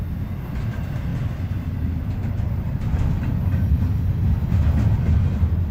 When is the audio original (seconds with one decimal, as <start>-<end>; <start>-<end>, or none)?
0.0-5.7